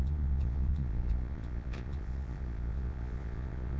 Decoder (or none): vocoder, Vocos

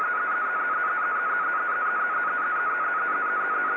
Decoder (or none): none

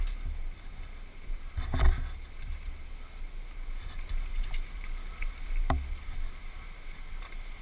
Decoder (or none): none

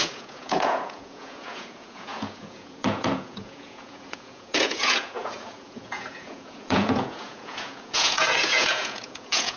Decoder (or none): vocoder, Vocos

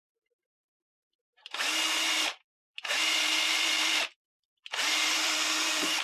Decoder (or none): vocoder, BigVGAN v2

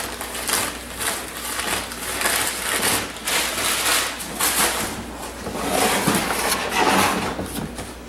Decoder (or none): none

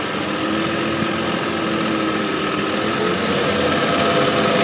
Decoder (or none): none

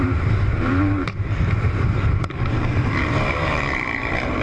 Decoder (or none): vocoder, BigVGAN v2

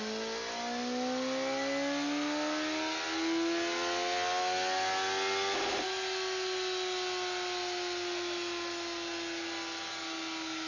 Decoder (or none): none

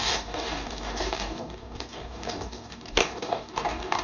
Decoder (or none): codec, DAC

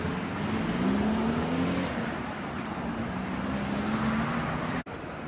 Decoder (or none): none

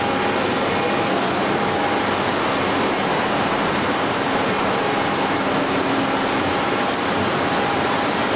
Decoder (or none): none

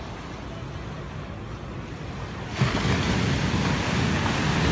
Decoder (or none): none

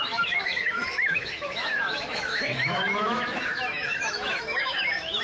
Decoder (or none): autoencoder, DAC-VAE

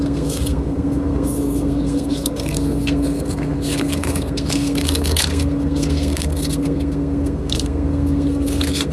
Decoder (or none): codec, SNAC